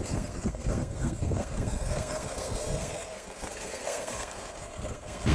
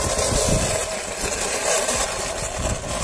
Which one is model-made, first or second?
first